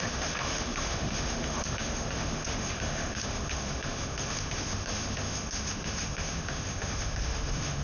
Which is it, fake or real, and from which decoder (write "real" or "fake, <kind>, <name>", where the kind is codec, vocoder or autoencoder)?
fake, autoencoder, DAC-VAE